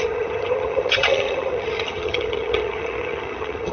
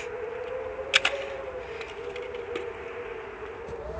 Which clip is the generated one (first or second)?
first